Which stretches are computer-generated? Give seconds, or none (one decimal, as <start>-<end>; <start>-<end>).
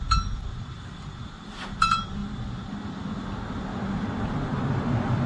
0.0-2.2; 4.2-5.3